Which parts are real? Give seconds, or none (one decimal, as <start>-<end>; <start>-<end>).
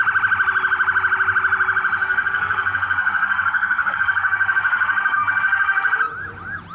0.0-2.0; 6.0-6.7